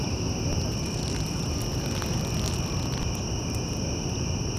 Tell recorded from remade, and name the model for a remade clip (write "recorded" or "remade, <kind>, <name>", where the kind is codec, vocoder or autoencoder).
recorded